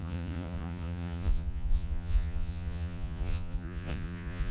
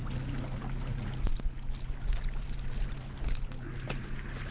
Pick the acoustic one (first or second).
second